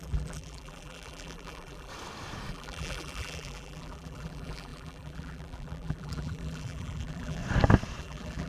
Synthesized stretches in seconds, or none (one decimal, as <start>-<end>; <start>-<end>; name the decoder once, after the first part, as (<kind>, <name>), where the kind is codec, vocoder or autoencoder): 0.0-1.9 (vocoder, BigVGAN v2); 2.5-7.4; 8.0-8.5